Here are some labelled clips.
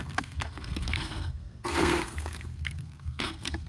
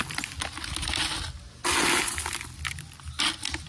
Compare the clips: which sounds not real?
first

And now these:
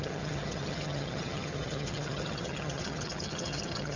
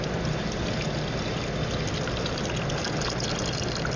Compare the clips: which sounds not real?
first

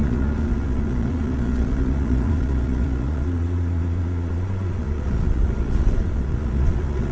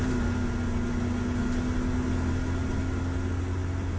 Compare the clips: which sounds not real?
first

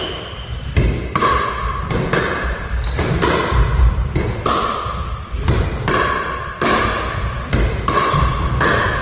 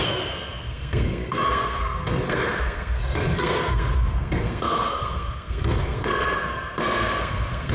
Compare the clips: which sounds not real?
second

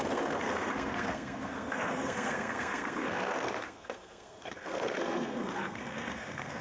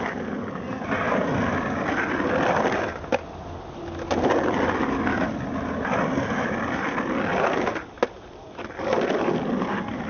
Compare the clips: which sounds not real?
first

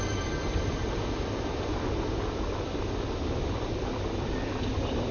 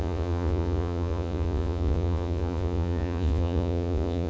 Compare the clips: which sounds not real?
second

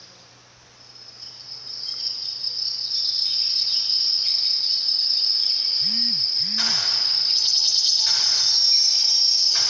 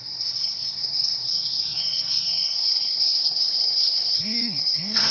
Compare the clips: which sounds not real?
second